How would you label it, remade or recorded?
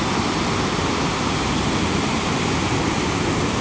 recorded